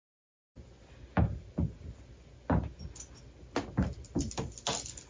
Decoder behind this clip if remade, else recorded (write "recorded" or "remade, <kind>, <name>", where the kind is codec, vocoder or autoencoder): recorded